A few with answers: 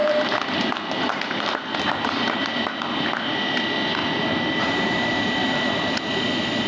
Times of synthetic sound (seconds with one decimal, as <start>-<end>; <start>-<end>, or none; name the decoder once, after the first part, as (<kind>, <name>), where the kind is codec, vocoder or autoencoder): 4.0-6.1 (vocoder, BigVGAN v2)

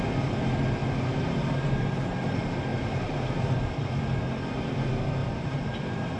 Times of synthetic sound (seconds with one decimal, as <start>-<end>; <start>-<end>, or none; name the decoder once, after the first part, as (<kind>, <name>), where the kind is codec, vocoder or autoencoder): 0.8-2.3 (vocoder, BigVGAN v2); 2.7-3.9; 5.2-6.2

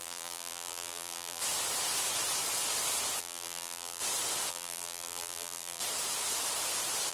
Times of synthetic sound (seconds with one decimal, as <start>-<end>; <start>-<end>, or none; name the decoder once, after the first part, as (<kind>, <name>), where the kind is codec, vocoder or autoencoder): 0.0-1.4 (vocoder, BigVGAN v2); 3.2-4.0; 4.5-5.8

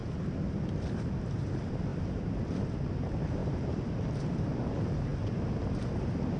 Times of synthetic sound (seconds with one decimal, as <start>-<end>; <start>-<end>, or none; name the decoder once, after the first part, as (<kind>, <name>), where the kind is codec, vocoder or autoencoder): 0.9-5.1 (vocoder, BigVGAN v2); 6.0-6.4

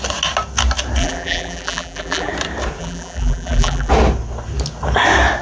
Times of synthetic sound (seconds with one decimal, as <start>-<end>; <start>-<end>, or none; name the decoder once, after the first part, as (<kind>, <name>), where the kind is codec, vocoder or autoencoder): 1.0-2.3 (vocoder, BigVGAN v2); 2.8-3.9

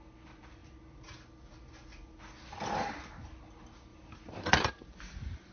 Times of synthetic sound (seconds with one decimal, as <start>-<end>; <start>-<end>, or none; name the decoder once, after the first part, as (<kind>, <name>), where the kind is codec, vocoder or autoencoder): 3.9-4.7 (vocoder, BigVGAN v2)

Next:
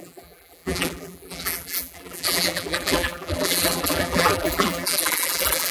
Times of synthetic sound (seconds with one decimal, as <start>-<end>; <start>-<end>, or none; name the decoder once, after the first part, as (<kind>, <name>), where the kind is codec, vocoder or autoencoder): 0.0-5.7 (vocoder, BigVGAN v2)